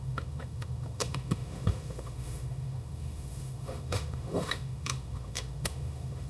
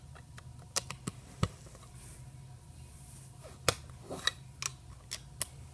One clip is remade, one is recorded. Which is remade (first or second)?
first